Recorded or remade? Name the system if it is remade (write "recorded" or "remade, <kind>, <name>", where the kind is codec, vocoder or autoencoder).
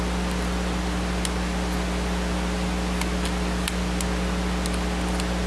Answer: recorded